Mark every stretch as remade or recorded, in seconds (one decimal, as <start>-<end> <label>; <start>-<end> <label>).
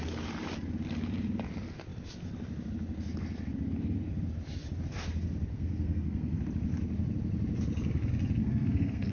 0.0-5.5 recorded; 5.5-6.4 remade; 6.4-8.4 recorded; 8.4-9.1 remade